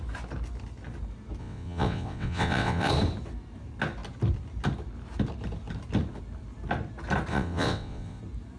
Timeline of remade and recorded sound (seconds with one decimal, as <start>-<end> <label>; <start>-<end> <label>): 0.0-1.4 recorded; 1.4-2.9 remade; 2.9-7.3 recorded; 7.3-8.2 remade; 8.2-8.6 recorded